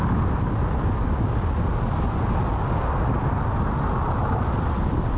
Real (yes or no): yes